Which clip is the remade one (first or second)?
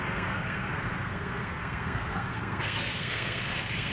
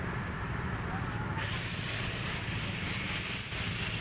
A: first